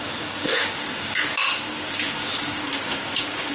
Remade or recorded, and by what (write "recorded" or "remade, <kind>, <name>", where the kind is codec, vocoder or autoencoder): remade, codec, DAC